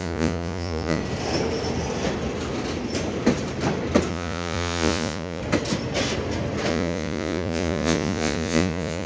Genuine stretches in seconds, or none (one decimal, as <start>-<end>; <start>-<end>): 1.0-4.1; 5.4-6.7